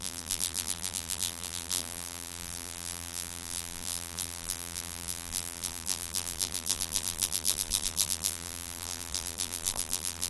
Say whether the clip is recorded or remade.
remade